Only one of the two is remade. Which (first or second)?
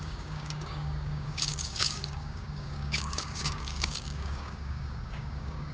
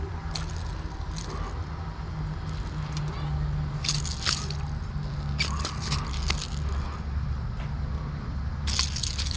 first